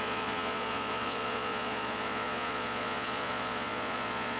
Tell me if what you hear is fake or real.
fake